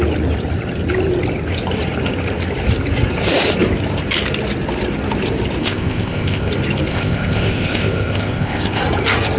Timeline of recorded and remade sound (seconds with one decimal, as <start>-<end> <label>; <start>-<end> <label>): 0.0-5.6 recorded; 5.6-6.5 remade; 6.5-6.9 recorded; 6.9-8.8 remade; 8.8-9.4 recorded